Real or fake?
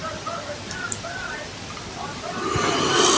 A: real